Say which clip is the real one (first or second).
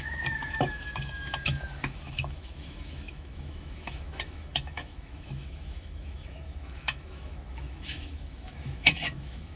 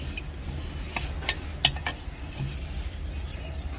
second